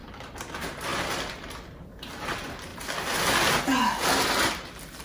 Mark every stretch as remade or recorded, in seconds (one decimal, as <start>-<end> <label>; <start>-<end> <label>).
0.0-5.0 recorded